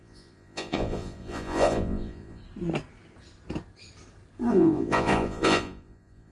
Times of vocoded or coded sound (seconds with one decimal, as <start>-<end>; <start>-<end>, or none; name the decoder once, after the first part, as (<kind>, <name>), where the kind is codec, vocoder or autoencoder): 0.0-2.4 (vocoder, Vocos); 4.5-6.3